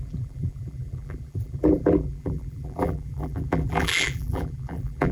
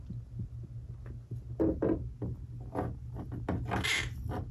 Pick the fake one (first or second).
first